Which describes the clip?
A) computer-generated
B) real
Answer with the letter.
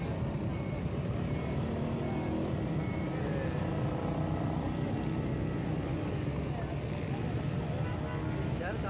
B